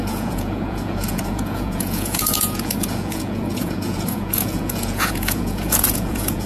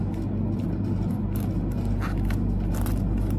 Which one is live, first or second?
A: second